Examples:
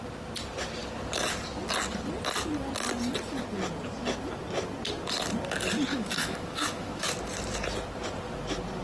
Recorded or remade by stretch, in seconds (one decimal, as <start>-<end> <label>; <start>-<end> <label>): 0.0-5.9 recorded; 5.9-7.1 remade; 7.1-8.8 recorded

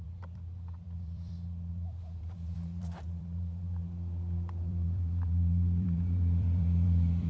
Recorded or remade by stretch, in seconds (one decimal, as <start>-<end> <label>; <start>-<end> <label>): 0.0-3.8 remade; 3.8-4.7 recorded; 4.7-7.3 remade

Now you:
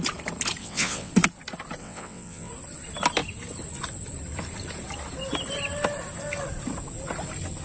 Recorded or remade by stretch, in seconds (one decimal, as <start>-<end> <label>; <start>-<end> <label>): 0.0-0.6 recorded; 0.6-1.1 remade; 1.1-1.8 recorded; 1.8-2.5 remade; 2.5-7.6 recorded